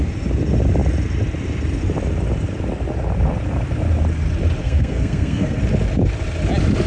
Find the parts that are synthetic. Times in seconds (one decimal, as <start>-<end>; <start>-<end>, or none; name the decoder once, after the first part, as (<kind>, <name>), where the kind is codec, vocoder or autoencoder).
4.6-5.6 (codec, SNAC)

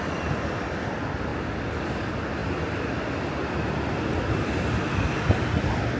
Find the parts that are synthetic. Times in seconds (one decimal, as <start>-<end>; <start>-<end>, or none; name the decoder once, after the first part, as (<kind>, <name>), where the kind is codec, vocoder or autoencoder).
none

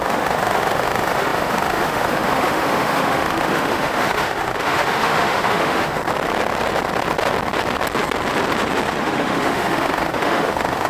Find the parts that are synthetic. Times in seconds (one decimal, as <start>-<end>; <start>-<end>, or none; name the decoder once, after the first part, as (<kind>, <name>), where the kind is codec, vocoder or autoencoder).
0.0-6.0 (autoencoder, DAC-VAE); 9.0-10.9

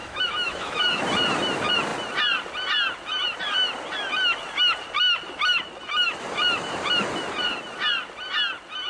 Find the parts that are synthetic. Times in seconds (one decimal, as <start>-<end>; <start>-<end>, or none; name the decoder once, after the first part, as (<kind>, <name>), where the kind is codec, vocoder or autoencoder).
0.0-1.0 (autoencoder, DAC-VAE)

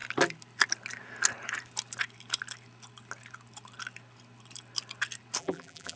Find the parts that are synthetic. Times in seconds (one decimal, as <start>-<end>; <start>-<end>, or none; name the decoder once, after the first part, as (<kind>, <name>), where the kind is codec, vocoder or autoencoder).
5.4-6.0 (vocoder, BigVGAN v2)

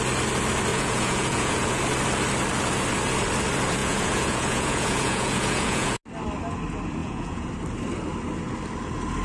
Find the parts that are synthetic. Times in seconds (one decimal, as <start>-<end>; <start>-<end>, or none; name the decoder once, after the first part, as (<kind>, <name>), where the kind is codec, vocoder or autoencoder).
0.7-1.8 (vocoder, Vocos); 3.8-6.0; 7.0-7.5

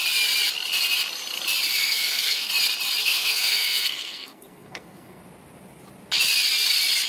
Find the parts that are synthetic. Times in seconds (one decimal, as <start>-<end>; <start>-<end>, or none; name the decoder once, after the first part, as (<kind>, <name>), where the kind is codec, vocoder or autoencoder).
1.8-2.5 (codec, SNAC); 3.0-5.2